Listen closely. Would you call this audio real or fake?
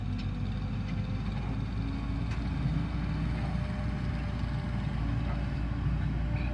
real